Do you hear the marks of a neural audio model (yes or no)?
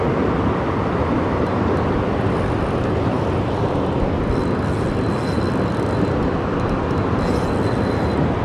no